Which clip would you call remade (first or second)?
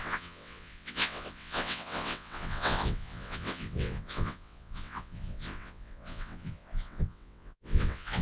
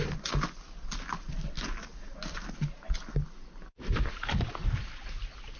first